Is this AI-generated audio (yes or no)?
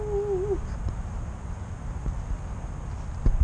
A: no